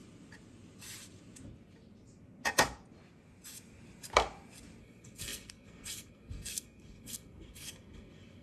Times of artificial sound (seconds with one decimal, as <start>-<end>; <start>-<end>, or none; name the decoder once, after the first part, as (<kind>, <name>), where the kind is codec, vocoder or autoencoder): 4.8-8.4 (codec, SNAC)